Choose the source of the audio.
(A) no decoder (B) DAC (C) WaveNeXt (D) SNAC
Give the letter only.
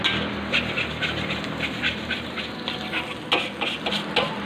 A